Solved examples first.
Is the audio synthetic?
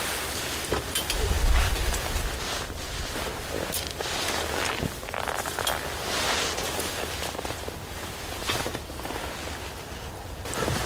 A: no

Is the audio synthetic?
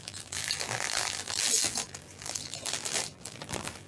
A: yes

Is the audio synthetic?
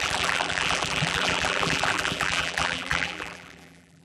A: yes